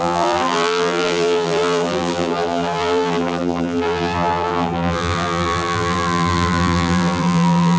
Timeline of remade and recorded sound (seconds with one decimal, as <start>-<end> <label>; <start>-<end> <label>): 0.0-7.8 remade